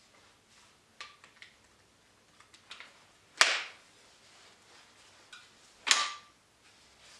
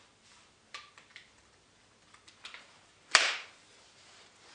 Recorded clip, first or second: first